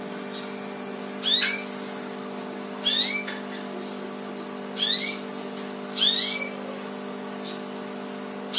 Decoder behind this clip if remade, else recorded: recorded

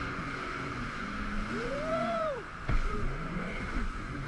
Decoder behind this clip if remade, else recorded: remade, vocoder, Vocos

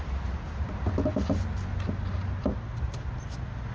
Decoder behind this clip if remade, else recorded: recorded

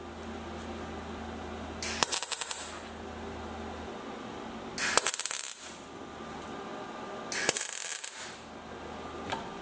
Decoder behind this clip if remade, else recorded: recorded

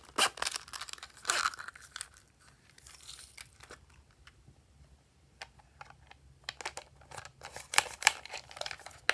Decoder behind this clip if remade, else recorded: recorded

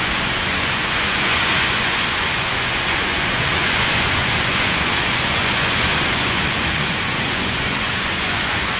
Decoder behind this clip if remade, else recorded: remade, vocoder, Vocos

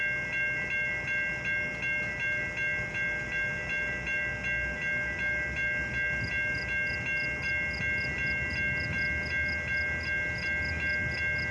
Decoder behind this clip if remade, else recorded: recorded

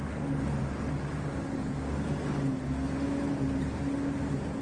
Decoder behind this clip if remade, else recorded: recorded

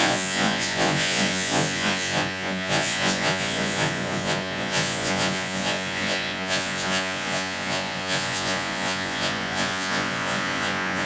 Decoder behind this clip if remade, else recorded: remade, vocoder, Vocos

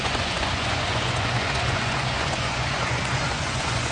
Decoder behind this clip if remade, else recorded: remade, vocoder, Vocos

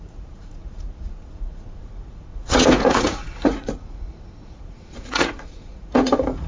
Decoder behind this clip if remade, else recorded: remade, vocoder, Vocos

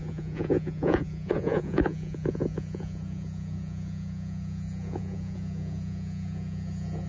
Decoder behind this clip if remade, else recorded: remade, vocoder, Vocos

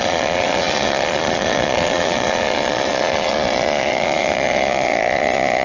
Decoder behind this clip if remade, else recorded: remade, vocoder, Vocos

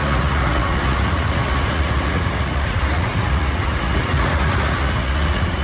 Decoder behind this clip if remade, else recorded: remade, vocoder, Vocos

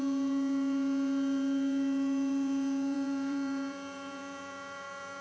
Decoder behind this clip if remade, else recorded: remade, vocoder, Vocos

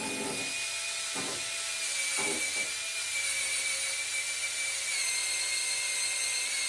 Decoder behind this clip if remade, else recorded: recorded